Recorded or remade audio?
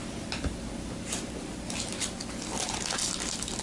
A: recorded